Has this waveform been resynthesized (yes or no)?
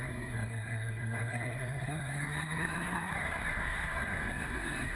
yes